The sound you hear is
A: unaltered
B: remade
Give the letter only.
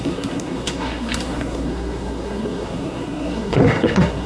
B